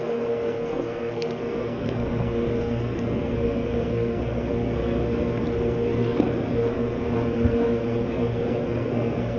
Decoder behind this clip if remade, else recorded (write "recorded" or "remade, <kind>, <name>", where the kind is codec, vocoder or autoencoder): remade, codec, SNAC